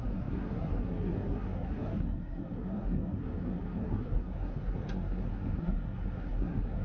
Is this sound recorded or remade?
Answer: remade